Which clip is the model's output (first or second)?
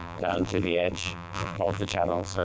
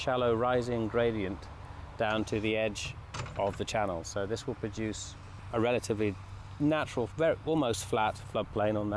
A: first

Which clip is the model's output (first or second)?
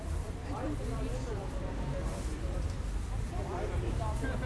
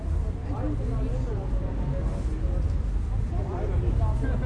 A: first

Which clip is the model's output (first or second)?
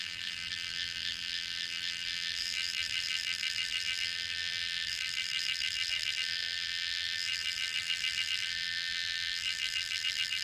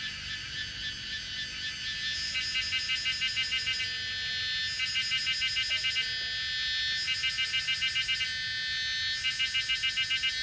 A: first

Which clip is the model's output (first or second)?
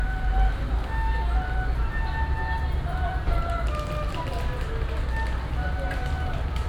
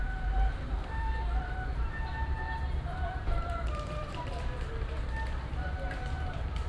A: second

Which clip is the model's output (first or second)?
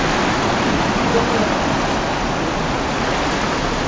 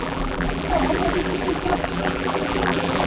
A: second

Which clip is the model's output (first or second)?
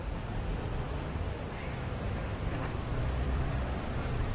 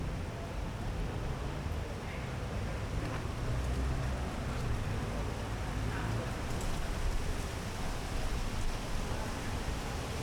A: first